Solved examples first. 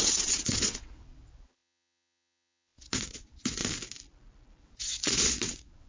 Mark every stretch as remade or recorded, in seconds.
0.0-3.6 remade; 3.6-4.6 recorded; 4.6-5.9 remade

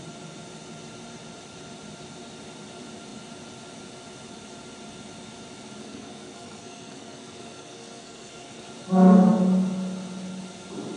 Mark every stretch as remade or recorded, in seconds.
0.0-5.8 recorded; 5.8-8.6 remade; 8.6-11.0 recorded

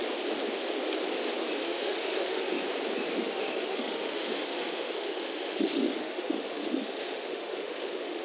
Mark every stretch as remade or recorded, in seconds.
0.0-1.6 recorded; 1.6-2.6 remade; 2.6-3.1 recorded; 3.1-8.2 remade

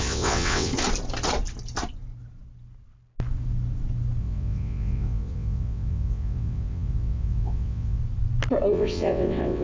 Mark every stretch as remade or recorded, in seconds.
0.0-0.7 remade; 0.7-4.2 recorded; 4.2-8.0 remade; 8.0-8.7 recorded; 8.7-9.6 remade

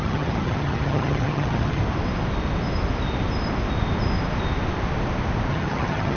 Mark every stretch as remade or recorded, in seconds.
0.0-1.8 remade; 1.8-5.5 recorded; 5.5-6.2 remade

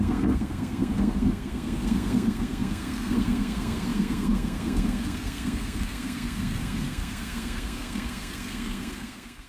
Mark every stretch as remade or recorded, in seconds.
0.0-9.5 remade